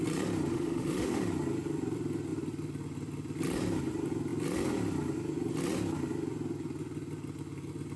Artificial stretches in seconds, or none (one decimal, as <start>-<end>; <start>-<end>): 0.5-1.3